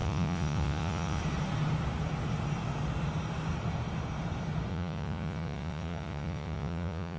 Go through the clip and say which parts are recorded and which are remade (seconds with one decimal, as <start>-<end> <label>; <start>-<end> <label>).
0.0-1.2 remade; 1.2-4.7 recorded; 4.7-7.2 remade